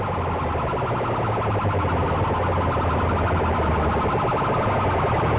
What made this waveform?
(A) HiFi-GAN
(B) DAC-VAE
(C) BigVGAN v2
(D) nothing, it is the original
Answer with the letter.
D